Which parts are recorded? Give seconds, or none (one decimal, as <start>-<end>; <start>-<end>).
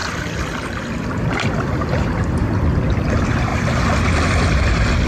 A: 3.5-4.4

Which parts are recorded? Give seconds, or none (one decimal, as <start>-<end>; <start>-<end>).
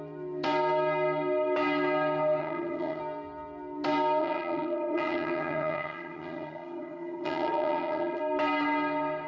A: 0.0-2.4; 3.0-4.2; 8.2-9.3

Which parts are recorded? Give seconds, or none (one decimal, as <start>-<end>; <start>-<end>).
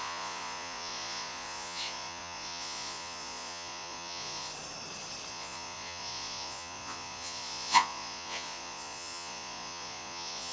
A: 4.5-5.3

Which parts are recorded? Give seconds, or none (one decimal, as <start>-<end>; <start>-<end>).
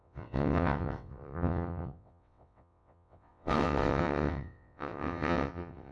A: none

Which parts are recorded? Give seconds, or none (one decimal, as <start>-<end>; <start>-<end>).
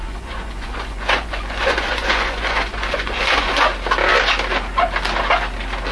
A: 3.5-5.9